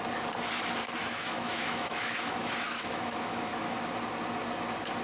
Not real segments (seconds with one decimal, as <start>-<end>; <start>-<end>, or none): 0.8-3.8